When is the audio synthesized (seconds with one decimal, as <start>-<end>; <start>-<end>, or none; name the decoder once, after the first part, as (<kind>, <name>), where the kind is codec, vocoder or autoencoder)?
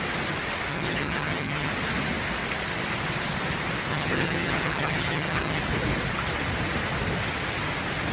0.7-1.7 (vocoder, HiFi-GAN); 3.9-5.6